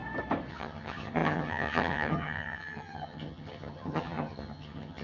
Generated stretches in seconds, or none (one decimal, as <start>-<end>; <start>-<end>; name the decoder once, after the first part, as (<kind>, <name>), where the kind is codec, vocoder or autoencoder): 0.5-5.0 (vocoder, HiFi-GAN)